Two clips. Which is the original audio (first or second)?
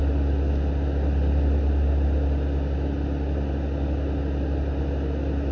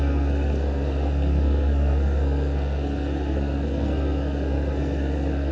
first